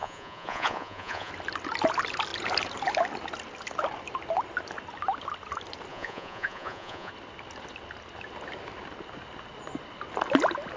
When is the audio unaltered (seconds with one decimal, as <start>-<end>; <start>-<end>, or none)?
1.3-5.9; 7.1-10.8